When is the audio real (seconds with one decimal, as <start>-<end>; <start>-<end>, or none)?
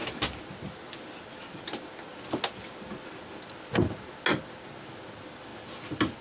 0.0-6.2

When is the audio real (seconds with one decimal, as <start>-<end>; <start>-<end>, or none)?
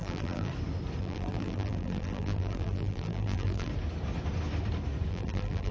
0.5-1.0; 3.7-5.1